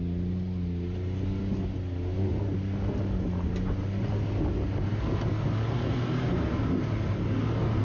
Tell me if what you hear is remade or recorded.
recorded